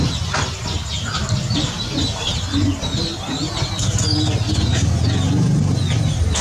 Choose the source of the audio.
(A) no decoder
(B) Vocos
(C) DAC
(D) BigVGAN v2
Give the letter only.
A